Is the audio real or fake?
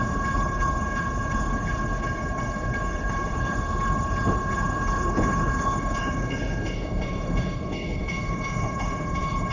fake